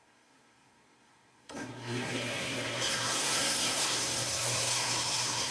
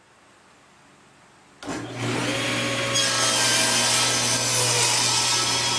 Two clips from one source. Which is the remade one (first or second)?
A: first